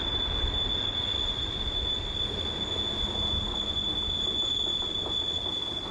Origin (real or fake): real